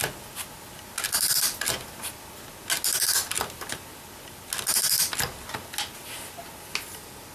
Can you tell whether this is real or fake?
real